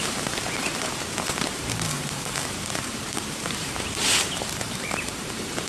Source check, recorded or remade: remade